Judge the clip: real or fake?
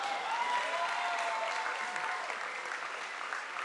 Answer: real